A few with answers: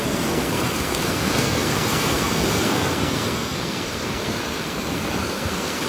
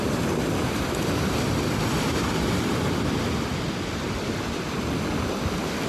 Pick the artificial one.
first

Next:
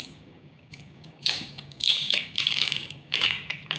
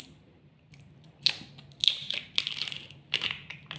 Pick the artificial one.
first